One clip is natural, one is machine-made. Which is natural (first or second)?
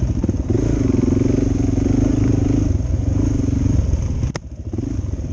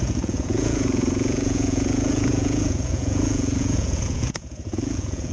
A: first